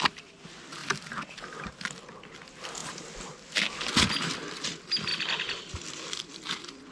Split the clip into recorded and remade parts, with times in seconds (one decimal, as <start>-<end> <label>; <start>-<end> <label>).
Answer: 0.0-6.9 recorded

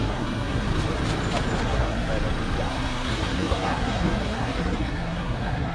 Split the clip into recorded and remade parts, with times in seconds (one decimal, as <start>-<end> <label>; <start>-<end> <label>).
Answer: 0.0-0.7 remade; 0.7-1.6 recorded; 1.6-2.1 remade; 2.1-2.7 recorded; 2.7-5.7 remade

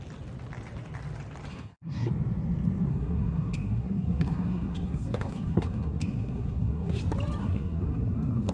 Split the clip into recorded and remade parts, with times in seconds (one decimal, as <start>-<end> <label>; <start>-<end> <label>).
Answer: 0.0-1.5 recorded; 1.5-2.1 remade; 2.1-2.9 recorded; 2.9-7.0 remade; 7.0-7.4 recorded; 7.4-8.5 remade

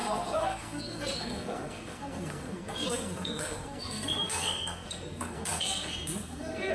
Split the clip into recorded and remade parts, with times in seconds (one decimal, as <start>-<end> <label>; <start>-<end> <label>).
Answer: 0.0-6.7 remade

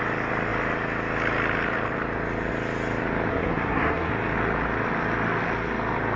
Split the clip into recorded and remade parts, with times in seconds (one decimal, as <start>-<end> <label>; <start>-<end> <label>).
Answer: 0.0-3.3 recorded; 3.3-4.1 remade; 4.1-6.2 recorded

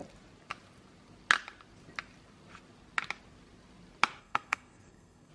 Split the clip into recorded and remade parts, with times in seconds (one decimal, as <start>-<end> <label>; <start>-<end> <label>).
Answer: 0.0-4.2 recorded; 4.2-5.3 remade